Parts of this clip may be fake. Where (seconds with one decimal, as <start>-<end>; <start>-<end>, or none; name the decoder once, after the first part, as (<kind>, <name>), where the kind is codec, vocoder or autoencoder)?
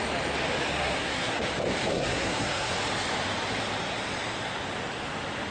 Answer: 0.8-1.4 (codec, SNAC); 1.9-2.7